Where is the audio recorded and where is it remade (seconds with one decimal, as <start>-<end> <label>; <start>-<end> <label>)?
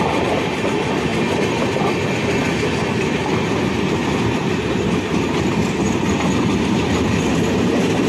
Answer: 0.0-8.1 recorded